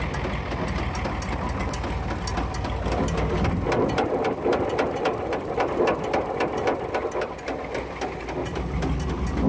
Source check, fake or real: real